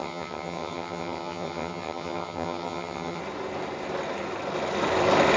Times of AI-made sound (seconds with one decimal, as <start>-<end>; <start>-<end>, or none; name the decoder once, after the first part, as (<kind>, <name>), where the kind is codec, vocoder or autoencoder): 0.0-3.2 (vocoder, HiFi-GAN)